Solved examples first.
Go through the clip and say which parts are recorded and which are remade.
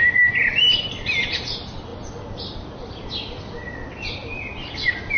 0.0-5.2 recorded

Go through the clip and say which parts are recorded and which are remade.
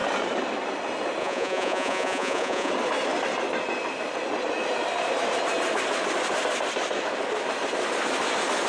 0.0-1.2 recorded; 1.2-2.7 remade; 2.7-8.7 recorded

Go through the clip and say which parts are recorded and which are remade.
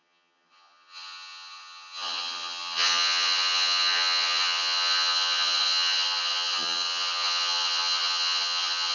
0.0-8.9 remade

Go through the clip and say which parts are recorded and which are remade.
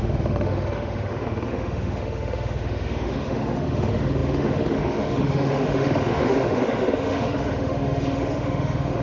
0.0-9.0 remade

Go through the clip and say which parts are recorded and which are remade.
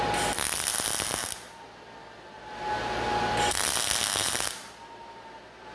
0.0-5.7 recorded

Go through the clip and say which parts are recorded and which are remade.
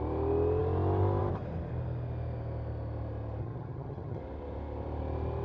0.0-3.4 recorded; 3.4-4.2 remade; 4.2-5.4 recorded